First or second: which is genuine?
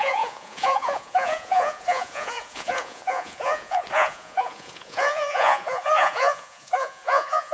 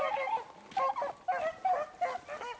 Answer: second